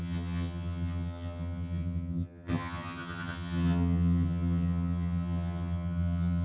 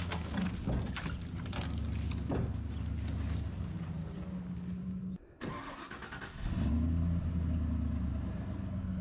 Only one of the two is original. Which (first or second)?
second